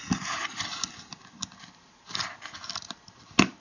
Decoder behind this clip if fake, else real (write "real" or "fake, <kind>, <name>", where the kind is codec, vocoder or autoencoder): real